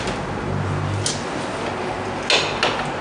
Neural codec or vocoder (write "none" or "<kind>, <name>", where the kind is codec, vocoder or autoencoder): none